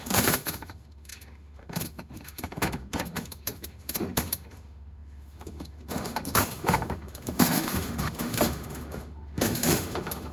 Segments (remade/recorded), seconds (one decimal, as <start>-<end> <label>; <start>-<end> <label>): 0.0-10.3 remade